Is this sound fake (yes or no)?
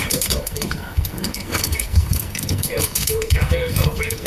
yes